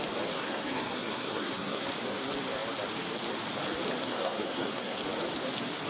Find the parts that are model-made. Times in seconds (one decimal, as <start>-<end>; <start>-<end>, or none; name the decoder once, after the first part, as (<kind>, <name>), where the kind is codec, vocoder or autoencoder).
0.4-1.9 (codec, SNAC); 4.0-5.0